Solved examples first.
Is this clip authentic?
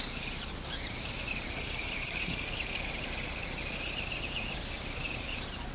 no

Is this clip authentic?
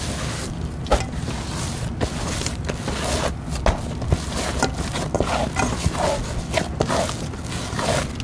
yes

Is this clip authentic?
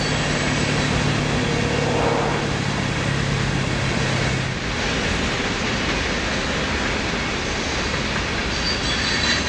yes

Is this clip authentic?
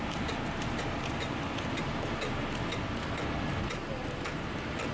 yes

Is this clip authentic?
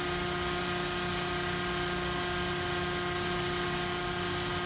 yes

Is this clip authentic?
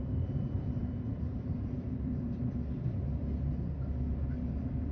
no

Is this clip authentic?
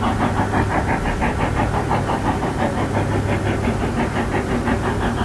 yes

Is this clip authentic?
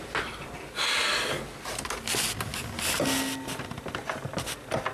yes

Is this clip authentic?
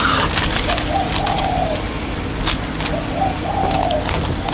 yes